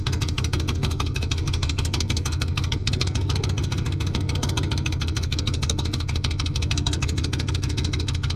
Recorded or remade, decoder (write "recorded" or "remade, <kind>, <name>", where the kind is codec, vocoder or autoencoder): remade, codec, SNAC